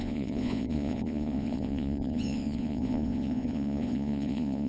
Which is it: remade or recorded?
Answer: remade